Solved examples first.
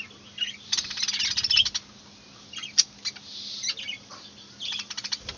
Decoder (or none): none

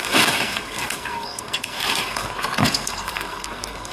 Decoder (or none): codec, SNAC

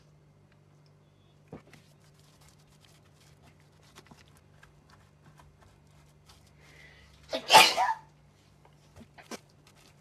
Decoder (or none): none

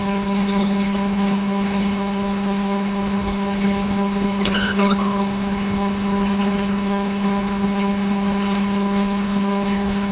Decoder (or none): codec, HILCodec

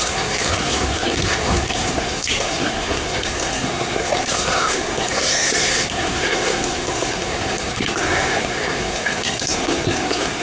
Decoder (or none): codec, SNAC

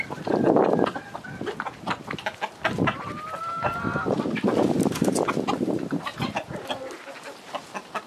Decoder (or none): none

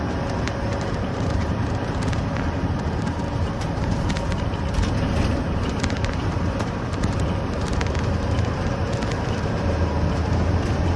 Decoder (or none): vocoder, BigVGAN v2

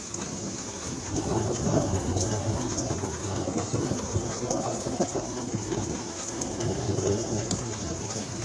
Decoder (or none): codec, SNAC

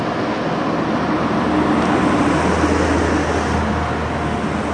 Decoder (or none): none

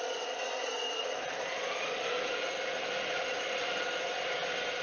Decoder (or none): none